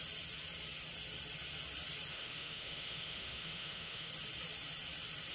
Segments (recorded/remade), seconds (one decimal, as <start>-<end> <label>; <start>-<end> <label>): 0.0-2.1 recorded; 2.1-4.1 remade; 4.1-5.3 recorded